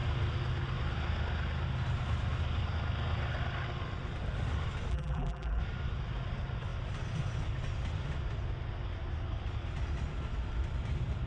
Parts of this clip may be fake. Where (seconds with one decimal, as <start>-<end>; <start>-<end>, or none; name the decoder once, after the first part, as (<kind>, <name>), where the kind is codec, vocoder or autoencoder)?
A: 4.9-5.6 (vocoder, BigVGAN v2)